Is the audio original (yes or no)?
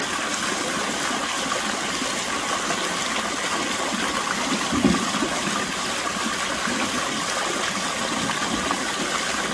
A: yes